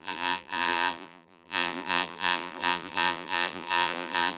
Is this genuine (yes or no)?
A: no